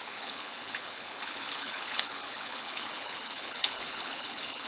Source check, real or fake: fake